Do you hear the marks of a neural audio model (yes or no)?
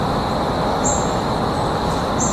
no